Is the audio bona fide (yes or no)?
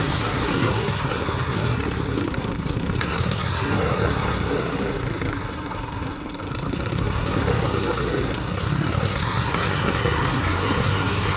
no